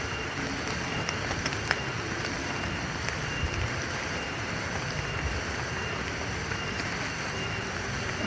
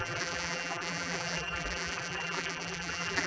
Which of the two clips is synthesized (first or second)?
second